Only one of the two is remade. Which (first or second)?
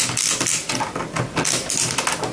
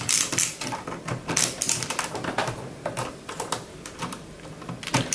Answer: second